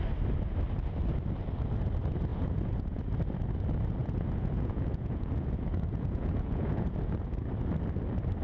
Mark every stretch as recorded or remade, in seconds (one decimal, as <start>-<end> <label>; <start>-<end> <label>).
0.0-2.3 recorded; 2.3-3.0 remade; 3.0-4.0 recorded; 4.0-7.5 remade; 7.5-8.4 recorded